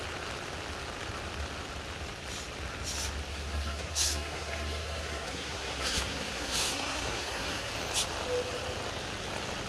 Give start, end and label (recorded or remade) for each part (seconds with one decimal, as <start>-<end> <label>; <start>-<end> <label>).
0.0-3.3 recorded; 3.3-7.7 remade; 7.7-9.7 recorded